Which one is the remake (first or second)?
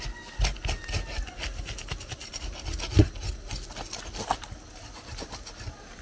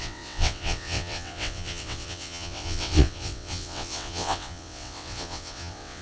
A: second